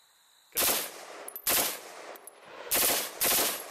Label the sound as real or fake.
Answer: real